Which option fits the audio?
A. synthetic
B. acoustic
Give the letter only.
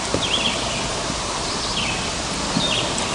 B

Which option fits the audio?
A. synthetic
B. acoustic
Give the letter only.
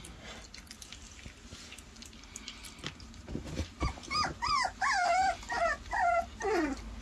B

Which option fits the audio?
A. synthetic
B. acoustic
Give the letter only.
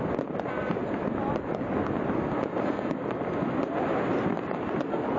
B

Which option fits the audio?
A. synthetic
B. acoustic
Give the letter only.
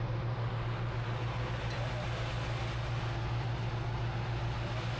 B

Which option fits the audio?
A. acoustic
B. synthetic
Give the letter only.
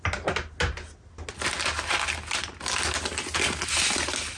A